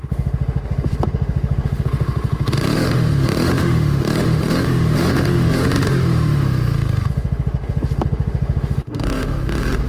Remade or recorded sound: remade